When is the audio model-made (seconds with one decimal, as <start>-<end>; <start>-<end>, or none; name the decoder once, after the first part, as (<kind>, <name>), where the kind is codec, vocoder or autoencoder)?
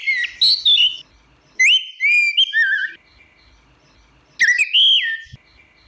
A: none